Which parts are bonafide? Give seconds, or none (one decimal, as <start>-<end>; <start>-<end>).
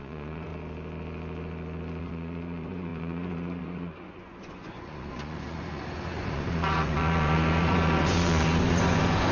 0.5-2.0